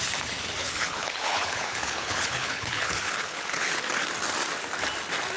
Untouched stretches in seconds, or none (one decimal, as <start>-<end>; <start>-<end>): 0.0-0.6; 3.8-5.4